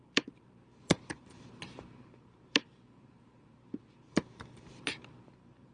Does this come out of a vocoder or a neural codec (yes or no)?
yes